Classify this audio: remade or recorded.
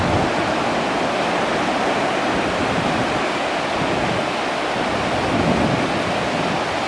recorded